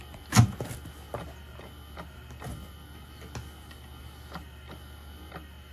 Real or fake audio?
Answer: real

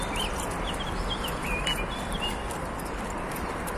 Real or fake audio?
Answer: real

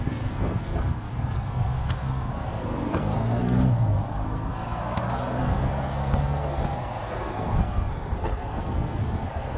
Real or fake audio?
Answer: fake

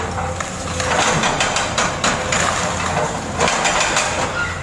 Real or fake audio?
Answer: real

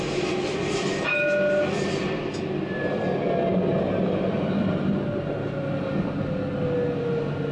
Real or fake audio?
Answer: real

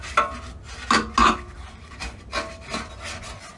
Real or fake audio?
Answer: real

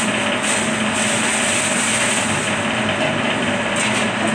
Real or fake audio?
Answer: real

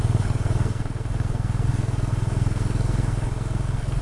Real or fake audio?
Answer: fake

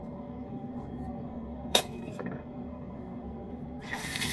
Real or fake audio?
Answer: fake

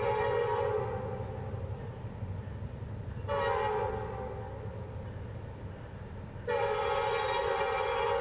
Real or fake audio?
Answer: real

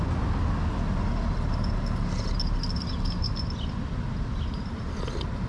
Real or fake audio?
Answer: real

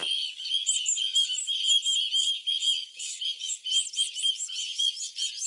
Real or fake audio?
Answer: real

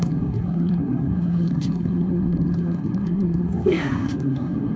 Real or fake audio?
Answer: fake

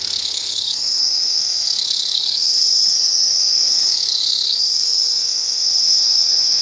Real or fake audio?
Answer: fake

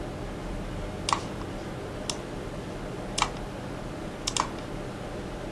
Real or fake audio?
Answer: real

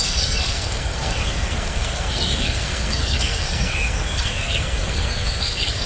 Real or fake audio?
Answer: fake